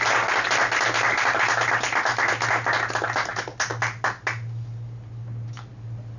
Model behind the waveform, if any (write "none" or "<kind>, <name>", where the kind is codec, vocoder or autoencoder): none